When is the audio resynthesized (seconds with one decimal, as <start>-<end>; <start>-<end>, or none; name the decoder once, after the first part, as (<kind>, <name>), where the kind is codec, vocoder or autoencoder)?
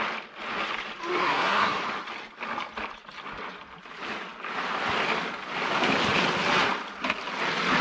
1.2-1.8 (codec, SNAC)